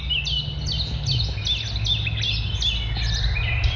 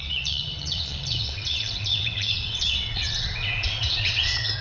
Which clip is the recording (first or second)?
first